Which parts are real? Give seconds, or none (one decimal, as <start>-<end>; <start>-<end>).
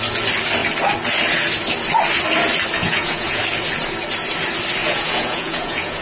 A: 0.0-2.8; 3.4-4.8